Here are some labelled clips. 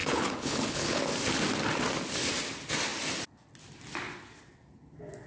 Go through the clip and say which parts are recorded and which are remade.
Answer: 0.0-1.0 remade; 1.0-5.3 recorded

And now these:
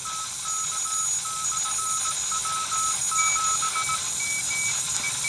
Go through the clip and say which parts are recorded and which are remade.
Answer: 0.0-5.3 recorded

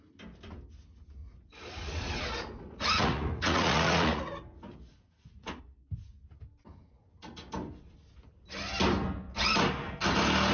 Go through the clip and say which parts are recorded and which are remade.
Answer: 0.0-1.2 recorded; 1.2-5.6 remade; 5.6-10.5 recorded

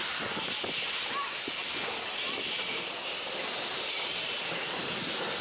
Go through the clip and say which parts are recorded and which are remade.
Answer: 0.0-5.4 recorded

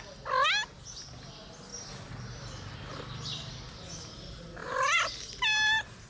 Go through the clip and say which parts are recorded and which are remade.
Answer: 0.0-6.1 recorded

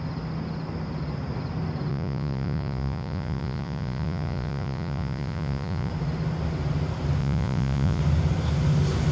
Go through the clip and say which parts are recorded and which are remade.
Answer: 0.0-1.9 recorded; 1.9-5.9 remade; 5.9-7.2 recorded; 7.2-8.0 remade; 8.0-9.1 recorded

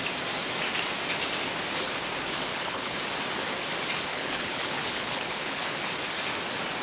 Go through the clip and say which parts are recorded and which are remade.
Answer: 0.0-2.5 recorded; 2.5-3.0 remade; 3.0-4.1 recorded; 4.1-5.8 remade; 5.8-6.8 recorded

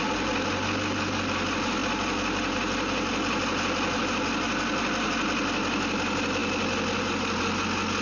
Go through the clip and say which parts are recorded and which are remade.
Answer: 0.0-1.8 recorded; 1.8-4.0 remade; 4.0-6.4 recorded; 6.4-7.4 remade; 7.4-8.0 recorded